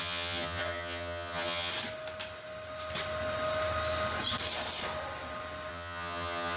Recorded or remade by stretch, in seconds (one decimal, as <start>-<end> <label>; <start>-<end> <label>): 0.0-1.7 remade; 1.7-5.7 recorded; 5.7-6.6 remade